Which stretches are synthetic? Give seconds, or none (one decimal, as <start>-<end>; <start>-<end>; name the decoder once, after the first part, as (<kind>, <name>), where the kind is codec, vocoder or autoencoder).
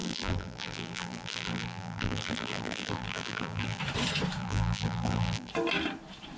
0.0-3.8 (vocoder, BigVGAN v2); 4.4-5.5